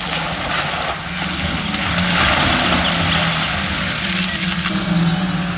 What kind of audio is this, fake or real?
real